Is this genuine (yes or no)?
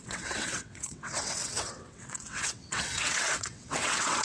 no